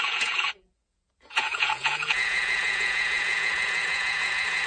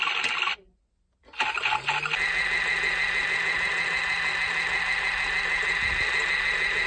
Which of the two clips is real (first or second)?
second